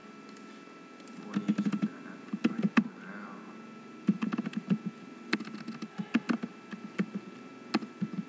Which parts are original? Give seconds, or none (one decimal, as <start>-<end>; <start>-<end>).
0.0-8.3